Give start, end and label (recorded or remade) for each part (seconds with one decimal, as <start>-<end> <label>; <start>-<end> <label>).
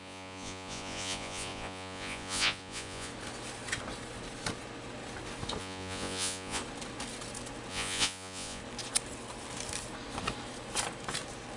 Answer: 0.0-3.1 remade; 3.1-5.6 recorded; 5.6-6.6 remade; 6.6-7.7 recorded; 7.7-8.6 remade; 8.6-11.6 recorded